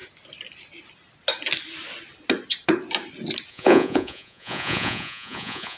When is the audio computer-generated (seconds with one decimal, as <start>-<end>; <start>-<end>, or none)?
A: 3.5-5.8